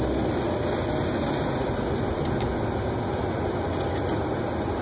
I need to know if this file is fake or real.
real